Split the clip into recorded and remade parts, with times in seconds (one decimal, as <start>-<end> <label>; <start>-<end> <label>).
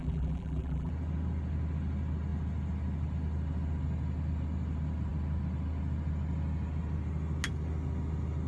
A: 0.0-0.9 remade; 0.9-8.5 recorded